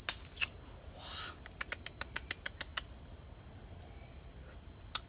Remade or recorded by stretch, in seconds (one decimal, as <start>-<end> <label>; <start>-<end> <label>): 0.0-5.1 recorded

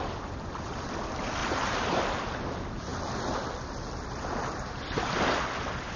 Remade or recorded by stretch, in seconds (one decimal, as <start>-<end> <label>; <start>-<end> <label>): 0.0-1.4 recorded; 1.4-2.0 remade; 2.0-6.0 recorded

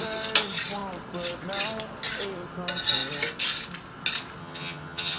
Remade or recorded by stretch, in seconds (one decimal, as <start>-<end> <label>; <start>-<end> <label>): 0.0-4.4 recorded; 4.4-5.2 remade

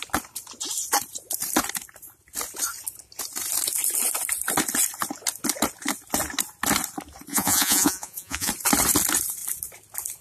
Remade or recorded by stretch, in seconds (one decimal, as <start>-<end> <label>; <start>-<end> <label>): 0.0-7.3 recorded; 7.3-8.5 remade; 8.5-10.2 recorded

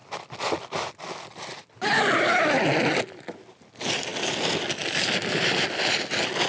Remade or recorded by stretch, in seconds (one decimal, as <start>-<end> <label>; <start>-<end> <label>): 0.0-6.5 recorded